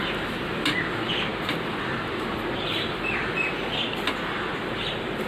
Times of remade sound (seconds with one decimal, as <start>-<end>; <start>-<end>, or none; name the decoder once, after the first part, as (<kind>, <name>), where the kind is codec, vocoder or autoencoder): none